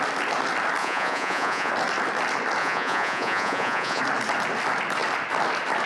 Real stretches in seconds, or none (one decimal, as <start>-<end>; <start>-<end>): 0.0-0.8; 1.7-2.6; 4.0-5.9